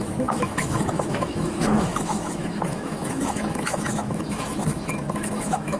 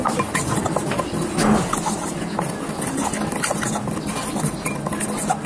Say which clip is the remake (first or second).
first